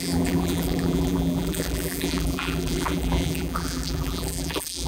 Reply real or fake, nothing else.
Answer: fake